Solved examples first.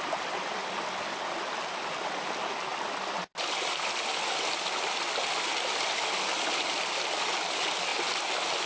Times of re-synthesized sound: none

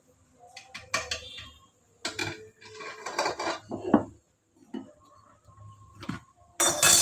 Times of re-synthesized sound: none

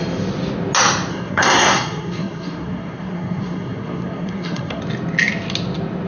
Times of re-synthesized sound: 1.1-4.8 (codec, SNAC)

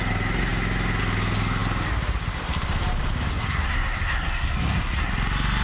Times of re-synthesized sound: 3.3-5.1 (codec, SNAC)

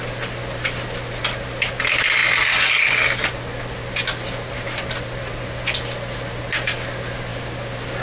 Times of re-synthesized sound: none